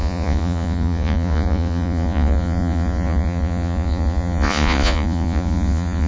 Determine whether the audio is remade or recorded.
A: remade